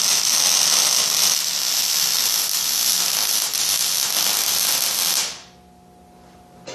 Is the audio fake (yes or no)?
no